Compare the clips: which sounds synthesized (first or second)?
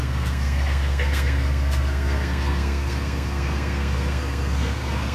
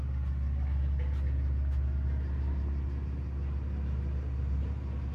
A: first